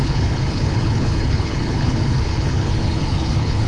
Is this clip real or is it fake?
fake